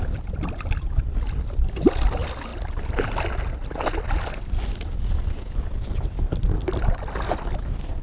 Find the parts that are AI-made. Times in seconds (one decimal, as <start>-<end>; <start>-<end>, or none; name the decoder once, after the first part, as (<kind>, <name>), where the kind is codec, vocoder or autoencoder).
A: none

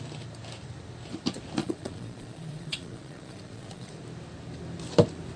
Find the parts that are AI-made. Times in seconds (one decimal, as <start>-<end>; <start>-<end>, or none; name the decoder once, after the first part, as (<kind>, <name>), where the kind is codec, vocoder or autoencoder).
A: 1.6-3.9 (vocoder, Vocos)